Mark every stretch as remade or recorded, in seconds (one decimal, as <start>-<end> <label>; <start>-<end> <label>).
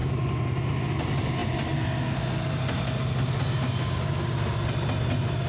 0.0-5.5 recorded